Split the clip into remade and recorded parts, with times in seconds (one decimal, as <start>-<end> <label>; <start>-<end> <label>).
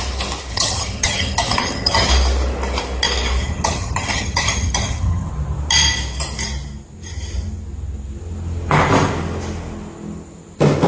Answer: 0.0-0.5 recorded; 0.5-2.1 remade; 2.1-3.4 recorded; 3.4-5.3 remade; 5.3-10.9 recorded